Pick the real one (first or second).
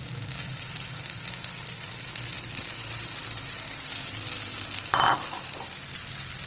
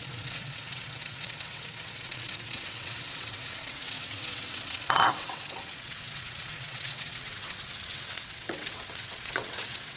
first